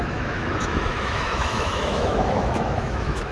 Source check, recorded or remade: remade